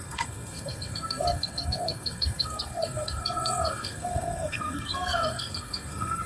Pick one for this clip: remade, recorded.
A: remade